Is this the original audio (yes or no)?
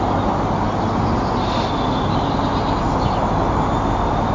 yes